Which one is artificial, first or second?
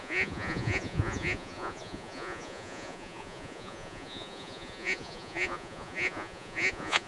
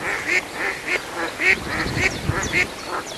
first